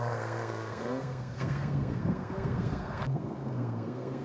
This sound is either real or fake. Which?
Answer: fake